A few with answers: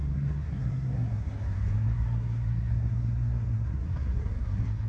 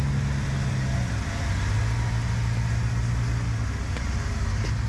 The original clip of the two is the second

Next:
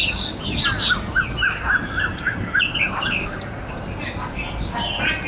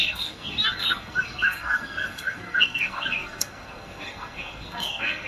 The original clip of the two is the first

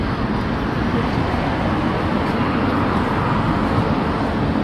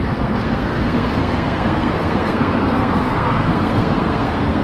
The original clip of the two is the first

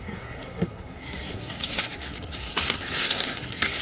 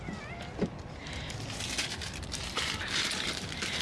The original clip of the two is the second